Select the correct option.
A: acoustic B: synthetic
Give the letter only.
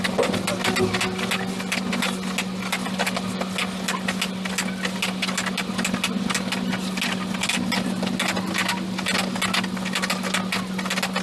A